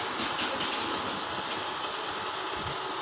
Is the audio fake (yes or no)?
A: no